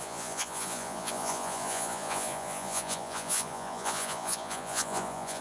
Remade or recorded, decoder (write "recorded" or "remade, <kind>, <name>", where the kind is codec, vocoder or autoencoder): remade, vocoder, Vocos